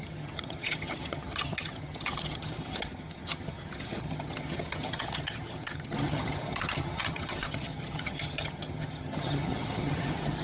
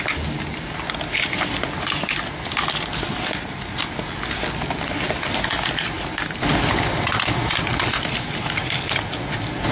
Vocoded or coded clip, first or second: first